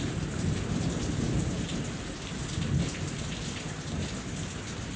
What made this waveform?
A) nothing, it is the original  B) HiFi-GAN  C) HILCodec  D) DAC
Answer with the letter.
A